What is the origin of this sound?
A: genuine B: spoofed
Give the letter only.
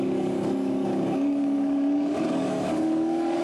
B